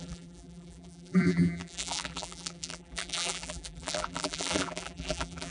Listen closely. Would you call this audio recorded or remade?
remade